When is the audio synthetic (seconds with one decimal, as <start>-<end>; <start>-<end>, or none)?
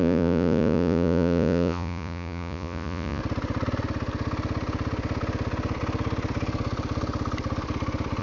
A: 0.0-3.2